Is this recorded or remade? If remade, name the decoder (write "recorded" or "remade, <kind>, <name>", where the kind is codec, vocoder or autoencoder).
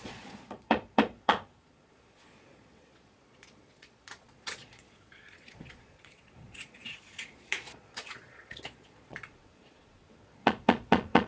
remade, vocoder, Vocos